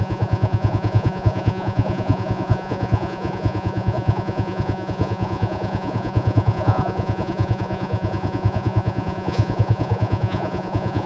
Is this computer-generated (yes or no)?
yes